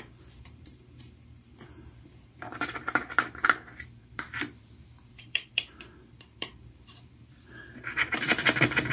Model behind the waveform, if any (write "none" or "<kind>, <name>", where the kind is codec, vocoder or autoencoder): vocoder, BigVGAN v2